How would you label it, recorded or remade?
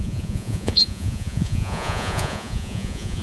remade